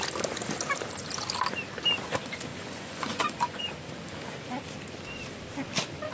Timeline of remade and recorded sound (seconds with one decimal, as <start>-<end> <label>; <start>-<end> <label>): 0.0-2.5 recorded; 2.5-3.6 remade; 3.6-6.1 recorded